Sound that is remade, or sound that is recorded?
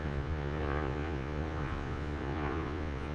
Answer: remade